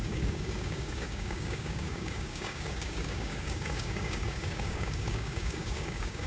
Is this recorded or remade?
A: remade